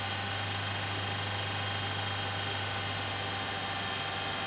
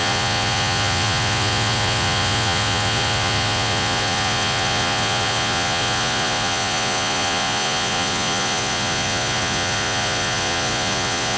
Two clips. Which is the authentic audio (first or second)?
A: first